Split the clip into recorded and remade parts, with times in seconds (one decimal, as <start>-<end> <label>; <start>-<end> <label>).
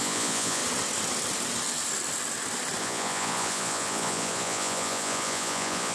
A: 0.0-0.6 remade; 0.6-2.8 recorded; 2.8-5.9 remade